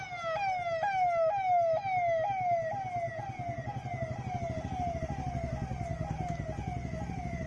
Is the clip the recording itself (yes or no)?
yes